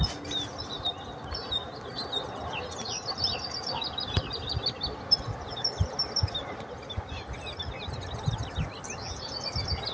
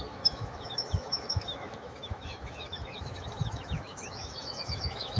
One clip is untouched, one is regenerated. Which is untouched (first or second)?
first